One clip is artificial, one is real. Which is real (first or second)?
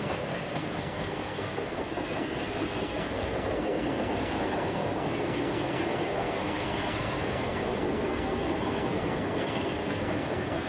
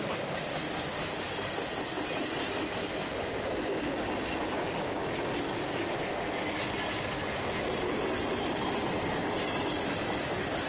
second